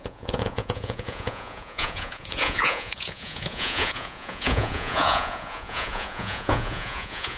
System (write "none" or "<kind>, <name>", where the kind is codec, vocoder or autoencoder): vocoder, Vocos